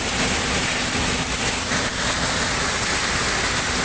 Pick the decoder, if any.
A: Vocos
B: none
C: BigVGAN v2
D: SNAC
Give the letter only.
B